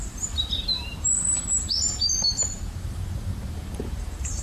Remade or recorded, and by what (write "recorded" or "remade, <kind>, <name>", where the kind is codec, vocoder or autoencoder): remade, vocoder, BigVGAN v2